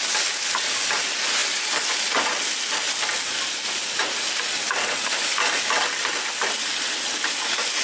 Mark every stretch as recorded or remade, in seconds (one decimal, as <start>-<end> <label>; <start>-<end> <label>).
0.0-7.8 recorded